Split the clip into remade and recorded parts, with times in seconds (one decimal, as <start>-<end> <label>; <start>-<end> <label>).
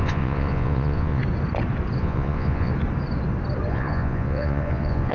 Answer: 0.0-1.2 remade; 1.2-2.0 recorded; 2.0-2.7 remade; 2.7-3.7 recorded; 3.7-5.1 remade